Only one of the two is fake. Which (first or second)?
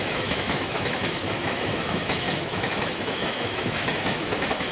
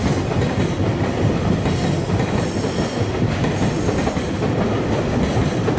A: first